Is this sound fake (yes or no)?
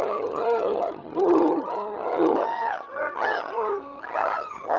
yes